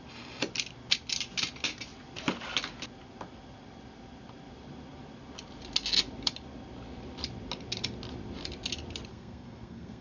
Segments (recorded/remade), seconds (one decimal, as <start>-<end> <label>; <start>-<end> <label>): 0.0-9.1 recorded; 9.1-10.0 remade